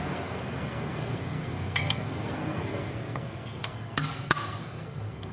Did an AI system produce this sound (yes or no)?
yes